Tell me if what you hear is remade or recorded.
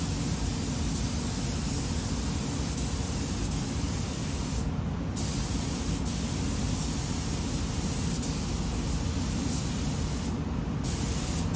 recorded